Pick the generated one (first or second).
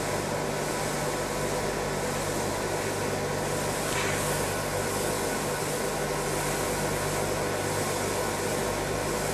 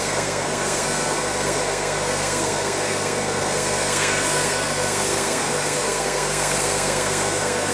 second